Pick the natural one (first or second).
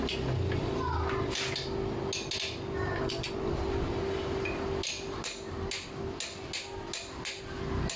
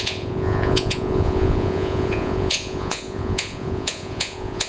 first